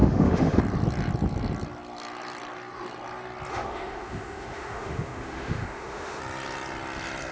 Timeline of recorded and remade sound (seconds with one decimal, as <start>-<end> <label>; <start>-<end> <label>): 0.0-0.6 remade; 0.6-3.5 recorded; 3.5-6.2 remade; 6.2-7.3 recorded